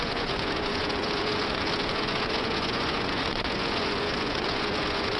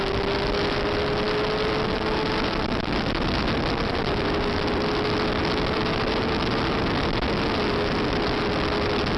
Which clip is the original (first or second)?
second